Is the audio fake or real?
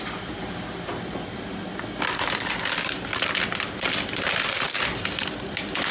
real